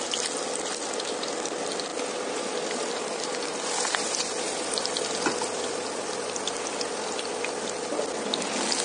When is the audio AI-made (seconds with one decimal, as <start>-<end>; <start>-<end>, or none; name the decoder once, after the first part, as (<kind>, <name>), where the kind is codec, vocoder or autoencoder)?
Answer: none